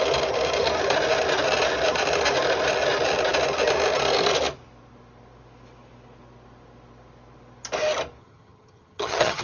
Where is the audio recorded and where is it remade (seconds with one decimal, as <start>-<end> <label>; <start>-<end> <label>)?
0.0-8.2 recorded; 8.2-9.4 remade